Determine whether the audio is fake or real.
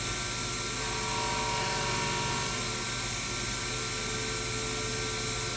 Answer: real